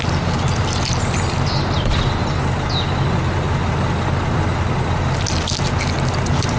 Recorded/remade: recorded